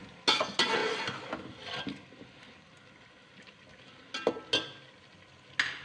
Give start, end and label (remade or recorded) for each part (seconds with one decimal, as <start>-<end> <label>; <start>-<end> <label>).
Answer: 0.0-5.8 recorded